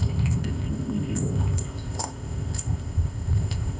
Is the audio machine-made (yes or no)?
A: yes